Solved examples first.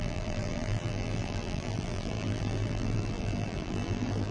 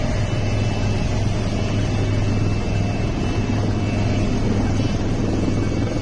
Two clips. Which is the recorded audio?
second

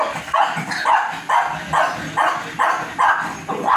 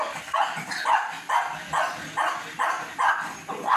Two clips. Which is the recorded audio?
first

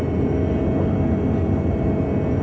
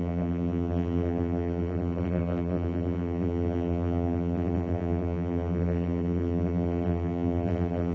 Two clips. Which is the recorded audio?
first